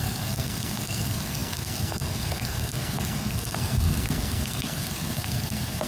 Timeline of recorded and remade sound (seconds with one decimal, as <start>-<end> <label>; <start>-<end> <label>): 0.0-5.9 remade